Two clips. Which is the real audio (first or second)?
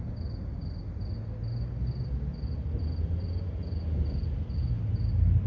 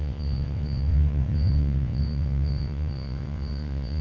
first